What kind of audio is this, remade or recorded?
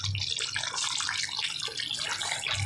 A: recorded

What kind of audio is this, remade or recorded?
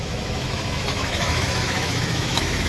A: remade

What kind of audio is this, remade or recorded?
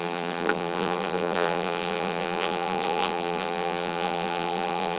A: remade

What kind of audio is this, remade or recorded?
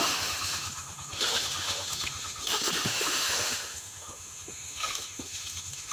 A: remade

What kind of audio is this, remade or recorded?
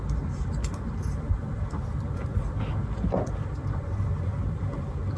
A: recorded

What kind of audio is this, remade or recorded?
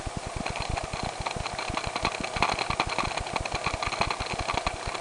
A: recorded